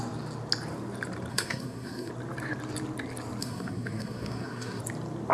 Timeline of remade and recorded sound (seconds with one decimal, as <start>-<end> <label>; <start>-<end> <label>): 0.0-1.3 recorded; 1.3-2.1 remade; 2.1-3.4 recorded; 3.4-4.8 remade; 4.8-5.3 recorded